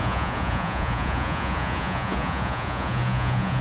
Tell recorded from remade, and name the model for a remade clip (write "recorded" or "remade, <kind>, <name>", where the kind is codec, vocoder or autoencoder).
remade, vocoder, Vocos